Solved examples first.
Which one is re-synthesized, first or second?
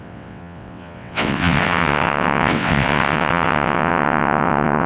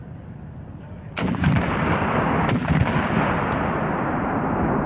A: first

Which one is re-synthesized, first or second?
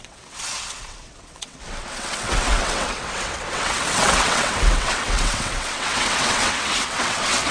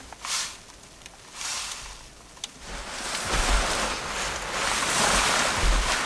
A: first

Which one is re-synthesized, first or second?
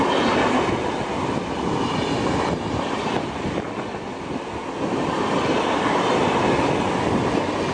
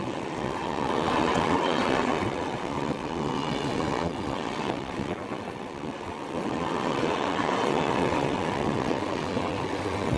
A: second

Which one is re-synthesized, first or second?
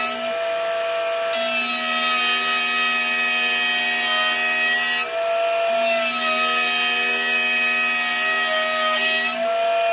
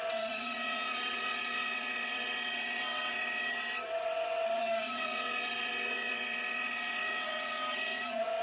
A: second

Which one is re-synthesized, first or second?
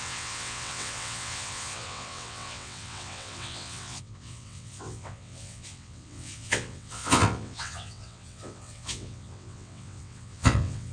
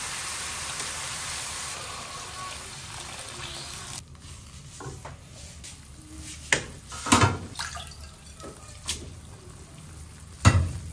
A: first